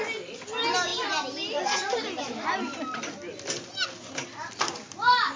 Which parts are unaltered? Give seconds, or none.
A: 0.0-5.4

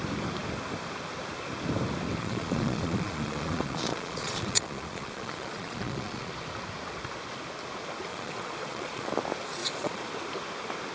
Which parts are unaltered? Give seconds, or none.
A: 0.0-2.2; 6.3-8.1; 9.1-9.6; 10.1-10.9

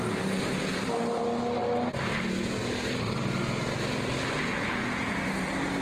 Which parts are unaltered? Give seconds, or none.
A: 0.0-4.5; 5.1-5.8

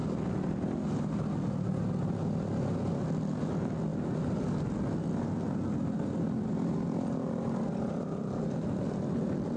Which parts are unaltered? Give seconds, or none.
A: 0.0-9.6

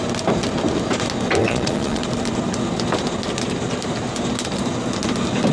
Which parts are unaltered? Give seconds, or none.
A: 0.0-1.4; 2.0-5.5

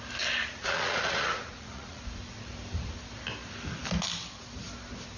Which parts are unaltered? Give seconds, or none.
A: 0.0-0.4; 2.0-5.2

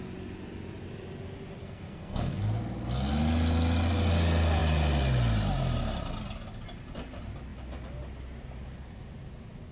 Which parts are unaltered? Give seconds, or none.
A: 0.0-1.6; 2.4-9.7